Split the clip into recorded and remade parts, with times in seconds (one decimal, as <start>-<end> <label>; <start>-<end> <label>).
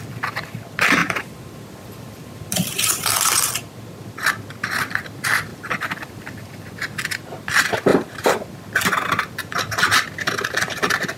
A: 0.0-1.0 recorded; 1.0-3.1 remade; 3.1-5.5 recorded; 5.5-6.6 remade; 6.6-7.9 recorded; 7.9-8.5 remade; 8.5-11.2 recorded